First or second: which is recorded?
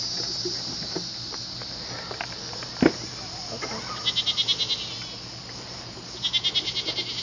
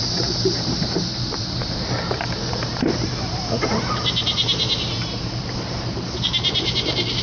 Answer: first